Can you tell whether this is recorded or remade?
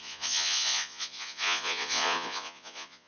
remade